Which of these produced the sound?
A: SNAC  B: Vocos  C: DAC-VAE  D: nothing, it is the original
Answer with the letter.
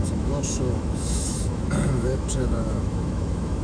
C